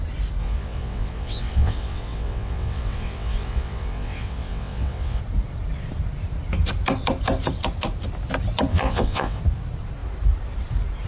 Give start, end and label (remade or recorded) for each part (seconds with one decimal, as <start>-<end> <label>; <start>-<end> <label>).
0.0-0.4 recorded; 0.4-5.2 remade; 5.2-8.7 recorded; 8.7-9.4 remade; 9.4-11.1 recorded